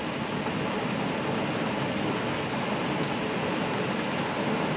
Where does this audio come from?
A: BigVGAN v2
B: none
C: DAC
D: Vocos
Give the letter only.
B